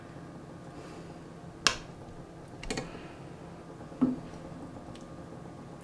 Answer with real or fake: real